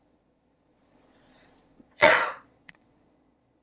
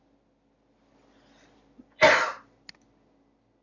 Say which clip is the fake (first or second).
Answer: first